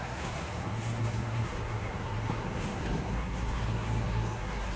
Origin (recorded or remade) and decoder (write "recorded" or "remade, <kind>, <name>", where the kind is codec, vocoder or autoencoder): remade, codec, SNAC